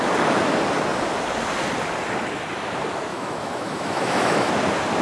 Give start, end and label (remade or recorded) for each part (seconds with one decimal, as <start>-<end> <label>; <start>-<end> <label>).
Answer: 0.0-3.1 recorded; 3.1-4.5 remade; 4.5-5.0 recorded